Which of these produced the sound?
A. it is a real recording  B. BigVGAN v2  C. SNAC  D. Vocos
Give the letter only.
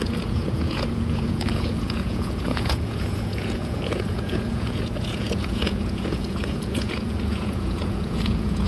D